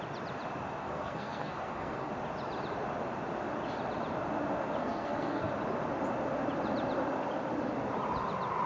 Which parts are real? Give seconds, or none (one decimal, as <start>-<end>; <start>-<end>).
0.0-0.8; 2.1-4.8; 5.5-8.7